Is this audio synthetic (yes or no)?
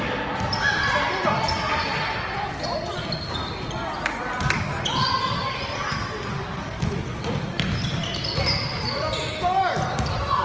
no